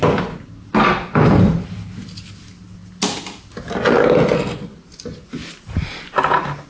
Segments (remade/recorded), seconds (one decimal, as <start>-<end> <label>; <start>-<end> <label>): 0.0-6.7 recorded